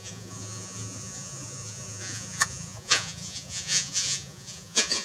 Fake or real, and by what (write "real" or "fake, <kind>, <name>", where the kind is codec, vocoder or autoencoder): fake, vocoder, Vocos